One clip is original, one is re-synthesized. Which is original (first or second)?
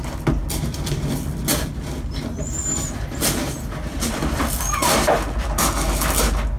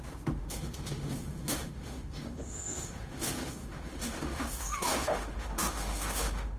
first